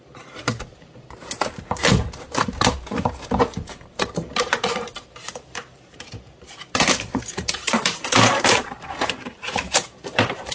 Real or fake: fake